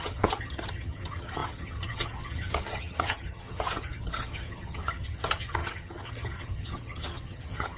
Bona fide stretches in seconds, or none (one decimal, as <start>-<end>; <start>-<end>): none